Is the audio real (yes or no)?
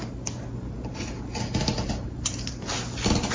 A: yes